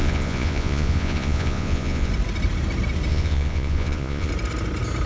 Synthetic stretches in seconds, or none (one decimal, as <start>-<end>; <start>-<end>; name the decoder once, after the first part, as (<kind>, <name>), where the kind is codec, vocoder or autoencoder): 0.0-2.1 (vocoder, Vocos); 3.1-4.3